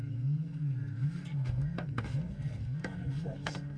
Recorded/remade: remade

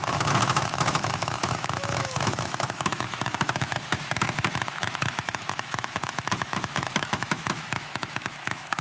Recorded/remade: remade